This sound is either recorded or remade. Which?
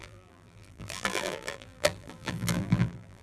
remade